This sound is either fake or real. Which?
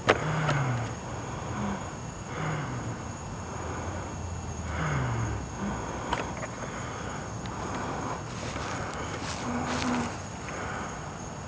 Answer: real